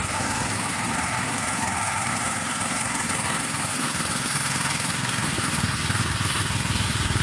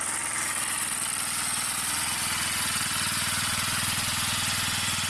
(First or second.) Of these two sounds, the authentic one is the second